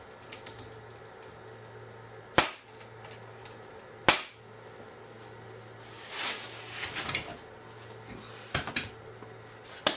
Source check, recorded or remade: recorded